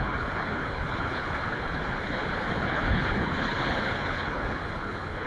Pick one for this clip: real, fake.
fake